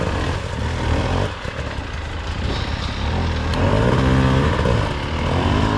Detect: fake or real real